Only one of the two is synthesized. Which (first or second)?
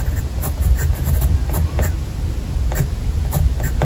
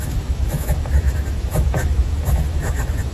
second